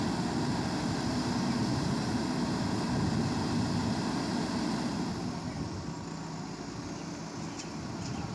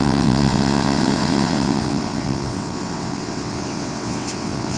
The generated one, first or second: second